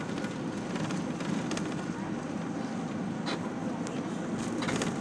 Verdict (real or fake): real